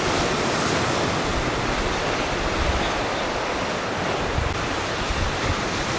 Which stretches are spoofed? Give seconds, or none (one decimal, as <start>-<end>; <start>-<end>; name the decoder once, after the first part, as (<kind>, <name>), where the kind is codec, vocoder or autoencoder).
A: none